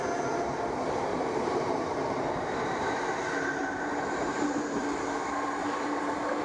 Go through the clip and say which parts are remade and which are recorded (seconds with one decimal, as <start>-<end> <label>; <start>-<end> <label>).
0.0-1.1 recorded; 1.1-4.8 remade; 4.8-5.6 recorded; 5.6-6.4 remade

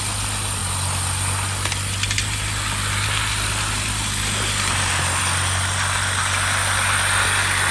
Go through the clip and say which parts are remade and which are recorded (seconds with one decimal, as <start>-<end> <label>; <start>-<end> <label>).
0.0-7.7 recorded

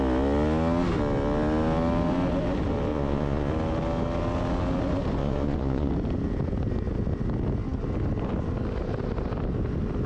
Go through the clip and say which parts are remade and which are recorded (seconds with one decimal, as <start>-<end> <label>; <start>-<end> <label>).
0.0-2.9 recorded; 2.9-3.5 remade; 3.5-5.2 recorded; 5.2-5.9 remade; 5.9-10.1 recorded

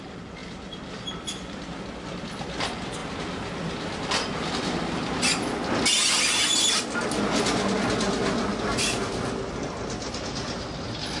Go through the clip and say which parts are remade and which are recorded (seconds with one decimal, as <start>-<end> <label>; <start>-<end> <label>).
0.0-11.2 recorded

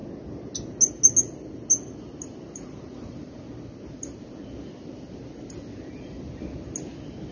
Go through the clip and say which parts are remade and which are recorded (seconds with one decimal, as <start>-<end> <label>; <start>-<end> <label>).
0.0-7.3 recorded